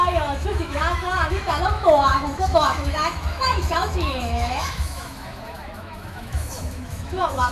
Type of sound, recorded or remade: remade